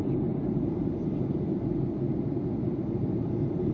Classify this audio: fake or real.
real